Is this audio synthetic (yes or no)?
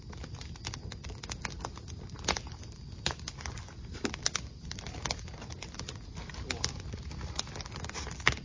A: no